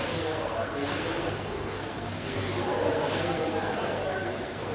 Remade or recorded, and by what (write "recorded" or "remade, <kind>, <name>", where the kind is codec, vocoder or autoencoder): remade, codec, SNAC